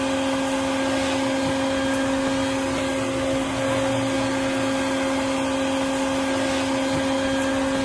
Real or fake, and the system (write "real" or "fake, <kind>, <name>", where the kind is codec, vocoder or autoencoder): real